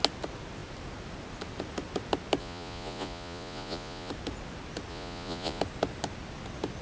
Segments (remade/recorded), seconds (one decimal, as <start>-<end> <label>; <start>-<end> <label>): 0.0-2.4 recorded; 2.4-4.1 remade; 4.1-4.9 recorded; 4.9-5.6 remade; 5.6-6.8 recorded